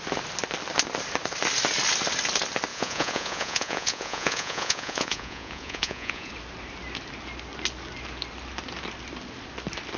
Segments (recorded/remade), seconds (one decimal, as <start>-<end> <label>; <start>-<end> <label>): 0.0-2.7 recorded; 2.7-6.3 remade; 6.3-10.0 recorded